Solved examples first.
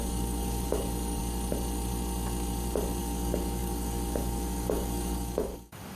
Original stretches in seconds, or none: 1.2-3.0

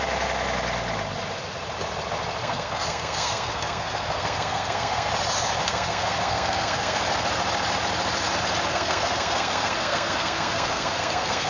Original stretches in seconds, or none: 0.0-2.4; 5.1-5.6; 7.0-8.7

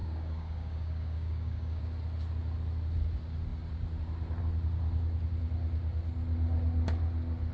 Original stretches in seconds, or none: 1.8-7.5

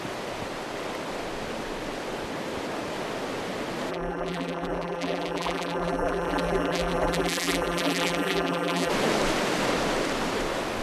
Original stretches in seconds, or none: 0.0-3.9; 8.9-10.8